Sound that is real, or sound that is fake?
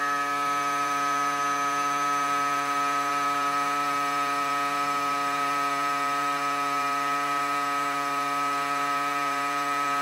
fake